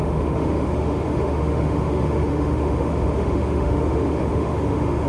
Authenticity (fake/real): fake